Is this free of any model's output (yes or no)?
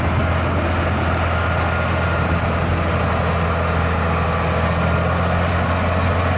yes